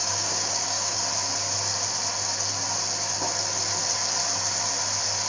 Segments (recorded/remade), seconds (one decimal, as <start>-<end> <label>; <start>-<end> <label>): 0.0-1.0 remade; 1.0-5.3 recorded